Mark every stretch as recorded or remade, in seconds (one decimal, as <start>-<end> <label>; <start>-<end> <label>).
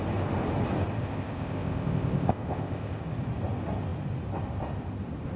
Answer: 0.0-1.0 recorded; 1.0-3.0 remade; 3.0-5.4 recorded